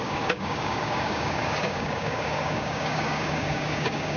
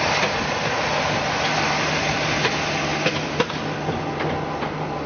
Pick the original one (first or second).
second